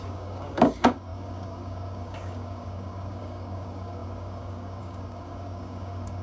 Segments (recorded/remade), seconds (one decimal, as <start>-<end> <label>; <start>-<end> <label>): 0.0-6.2 remade